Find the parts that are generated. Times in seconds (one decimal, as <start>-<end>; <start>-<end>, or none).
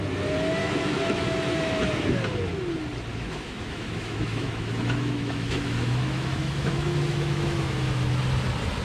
0.6-1.8; 3.1-8.2